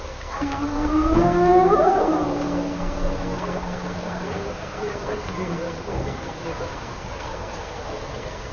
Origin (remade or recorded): remade